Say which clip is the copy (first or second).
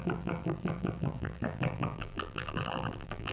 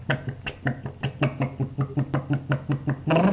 first